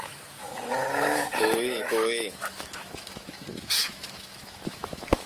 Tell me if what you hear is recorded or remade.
remade